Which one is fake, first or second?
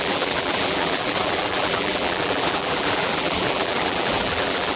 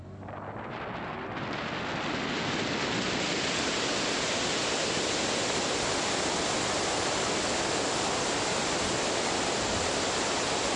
first